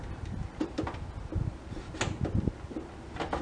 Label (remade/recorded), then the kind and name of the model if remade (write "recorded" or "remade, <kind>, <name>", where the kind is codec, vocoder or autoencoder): recorded